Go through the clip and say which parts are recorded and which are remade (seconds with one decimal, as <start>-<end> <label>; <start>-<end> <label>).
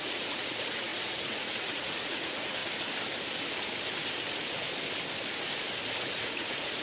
0.0-2.6 remade; 2.6-6.0 recorded; 6.0-6.8 remade